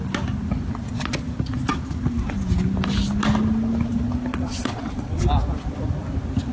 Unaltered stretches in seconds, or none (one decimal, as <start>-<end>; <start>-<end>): 0.0-4.3; 5.2-6.5